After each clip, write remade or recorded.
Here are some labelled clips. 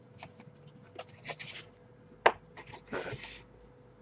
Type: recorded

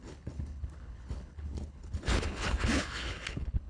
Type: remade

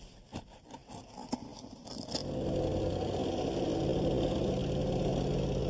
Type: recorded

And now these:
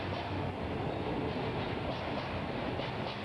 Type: recorded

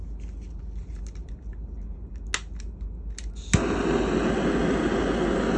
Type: recorded